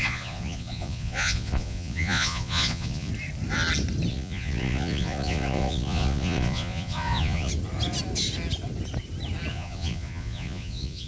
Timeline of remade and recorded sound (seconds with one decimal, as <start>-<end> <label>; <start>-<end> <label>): 0.0-3.1 remade; 3.1-4.1 recorded; 4.1-7.5 remade; 7.5-9.5 recorded; 9.5-11.1 remade